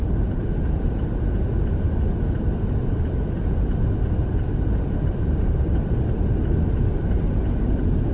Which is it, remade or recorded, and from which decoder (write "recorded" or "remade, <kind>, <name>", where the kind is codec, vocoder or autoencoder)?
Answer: recorded